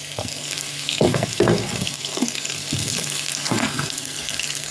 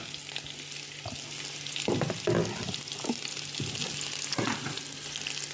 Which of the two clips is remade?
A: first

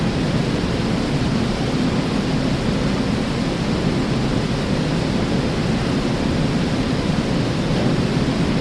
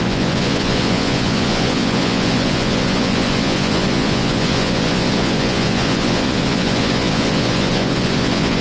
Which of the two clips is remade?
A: second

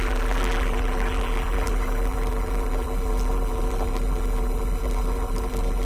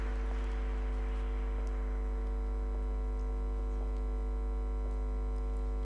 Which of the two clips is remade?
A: first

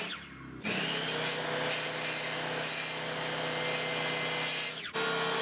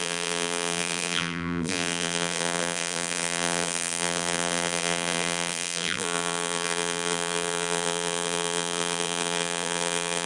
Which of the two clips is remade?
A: second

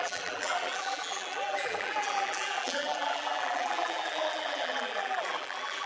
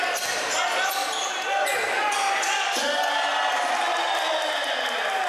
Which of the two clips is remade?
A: first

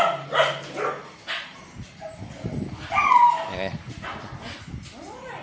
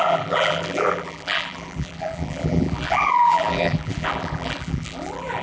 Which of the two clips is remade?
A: second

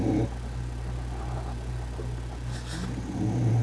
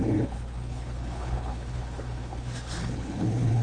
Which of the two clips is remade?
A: second